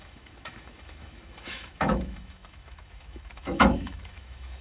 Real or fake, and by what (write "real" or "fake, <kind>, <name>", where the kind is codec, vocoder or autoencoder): fake, autoencoder, DAC-VAE